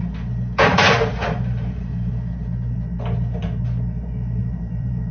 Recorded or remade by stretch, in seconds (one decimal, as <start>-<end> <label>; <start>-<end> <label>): 0.0-0.7 recorded; 0.7-2.1 remade; 2.1-4.4 recorded; 4.4-5.1 remade